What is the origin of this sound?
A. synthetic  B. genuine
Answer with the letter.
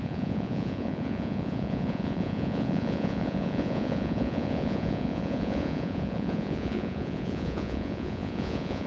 A